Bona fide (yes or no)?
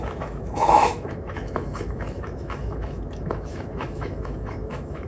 no